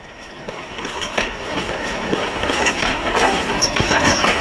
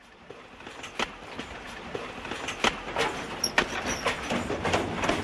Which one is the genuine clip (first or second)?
second